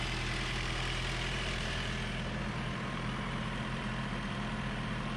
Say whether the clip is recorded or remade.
remade